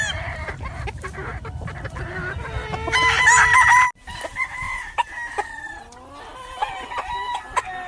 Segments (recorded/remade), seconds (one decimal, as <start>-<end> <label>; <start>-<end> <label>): 0.0-7.9 recorded